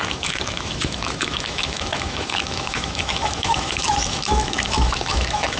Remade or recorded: remade